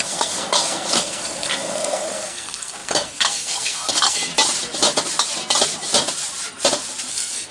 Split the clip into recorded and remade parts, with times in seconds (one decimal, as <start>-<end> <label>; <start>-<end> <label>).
0.0-4.3 remade; 4.3-7.1 recorded; 7.1-7.5 remade